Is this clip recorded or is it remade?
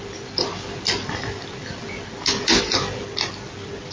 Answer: recorded